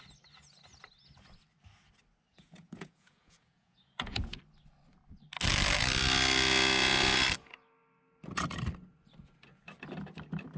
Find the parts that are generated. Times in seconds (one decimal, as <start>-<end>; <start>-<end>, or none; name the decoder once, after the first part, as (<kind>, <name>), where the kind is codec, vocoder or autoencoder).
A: 2.3-4.4 (vocoder, Vocos)